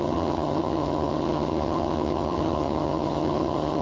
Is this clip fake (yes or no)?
yes